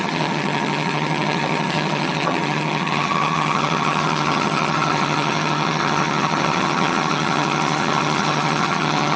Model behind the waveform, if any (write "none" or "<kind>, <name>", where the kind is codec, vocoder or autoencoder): vocoder, HiFi-GAN